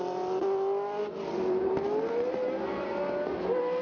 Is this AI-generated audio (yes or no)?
no